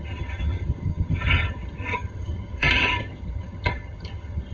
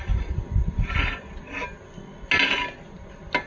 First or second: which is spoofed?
first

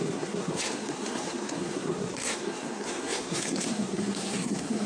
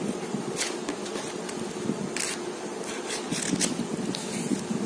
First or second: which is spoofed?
first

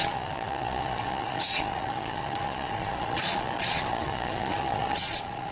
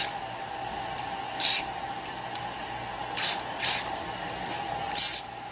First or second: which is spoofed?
first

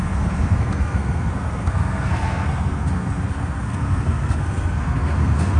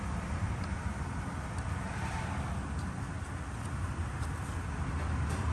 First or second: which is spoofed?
first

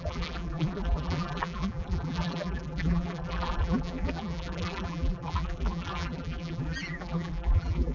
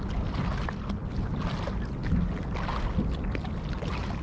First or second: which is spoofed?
first